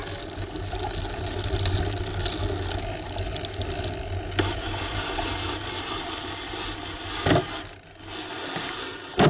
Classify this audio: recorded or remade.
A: recorded